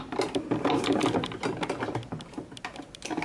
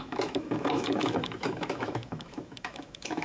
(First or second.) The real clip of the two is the first